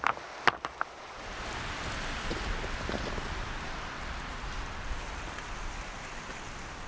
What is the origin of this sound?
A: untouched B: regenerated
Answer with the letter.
A